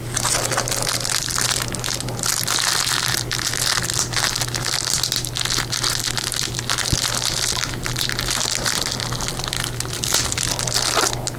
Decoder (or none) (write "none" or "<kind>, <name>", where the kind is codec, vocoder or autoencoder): none